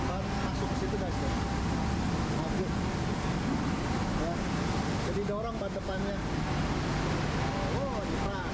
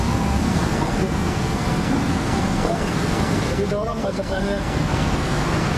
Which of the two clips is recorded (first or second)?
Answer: first